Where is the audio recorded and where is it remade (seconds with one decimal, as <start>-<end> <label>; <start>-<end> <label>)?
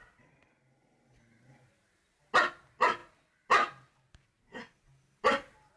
0.0-5.8 recorded